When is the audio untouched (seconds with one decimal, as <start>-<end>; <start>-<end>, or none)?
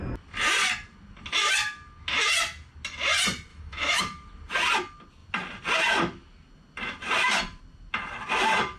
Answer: 0.0-3.5; 4.0-8.8